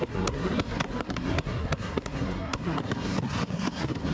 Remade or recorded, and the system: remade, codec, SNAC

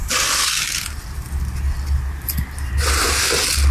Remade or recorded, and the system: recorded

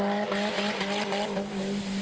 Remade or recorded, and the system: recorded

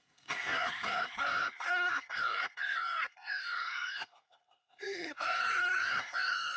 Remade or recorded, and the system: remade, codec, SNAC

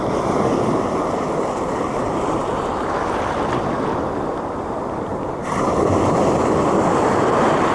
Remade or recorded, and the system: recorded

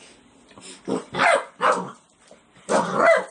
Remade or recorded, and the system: recorded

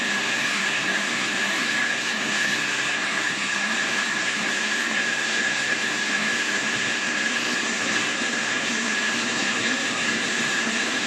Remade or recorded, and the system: remade, codec, SNAC